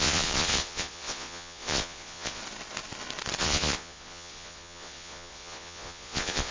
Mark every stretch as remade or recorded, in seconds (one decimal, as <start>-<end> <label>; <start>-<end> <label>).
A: 0.0-2.4 remade; 2.4-3.4 recorded; 3.4-6.5 remade